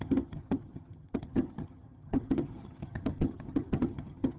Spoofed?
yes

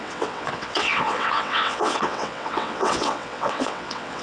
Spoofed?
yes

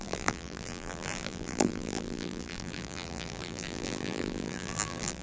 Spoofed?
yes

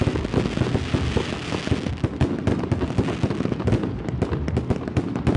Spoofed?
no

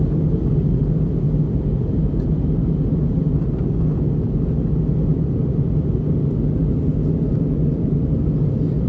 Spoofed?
no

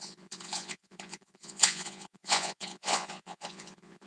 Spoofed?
yes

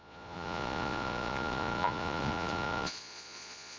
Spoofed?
yes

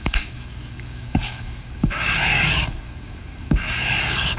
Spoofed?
yes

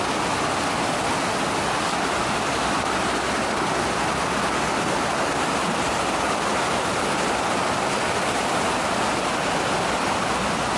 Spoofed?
no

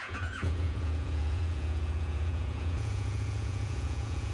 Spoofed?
yes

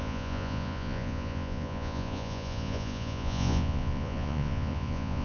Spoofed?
yes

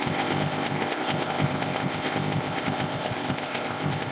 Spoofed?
yes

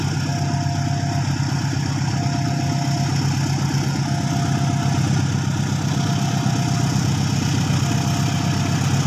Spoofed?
no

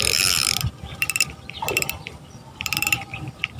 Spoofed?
yes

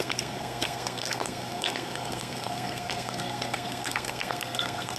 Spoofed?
yes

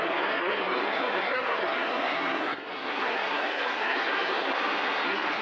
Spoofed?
yes